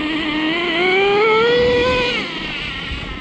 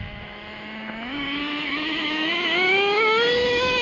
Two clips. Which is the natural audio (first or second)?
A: first